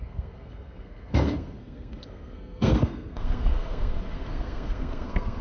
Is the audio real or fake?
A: fake